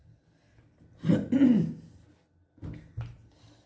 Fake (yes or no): no